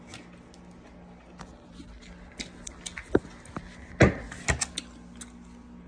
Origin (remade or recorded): recorded